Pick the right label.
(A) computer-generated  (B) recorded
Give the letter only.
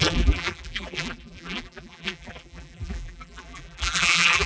A